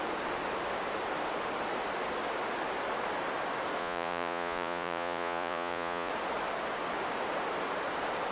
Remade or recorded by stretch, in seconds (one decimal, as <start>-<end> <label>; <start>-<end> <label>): 0.0-3.8 recorded; 3.8-6.1 remade; 6.1-8.3 recorded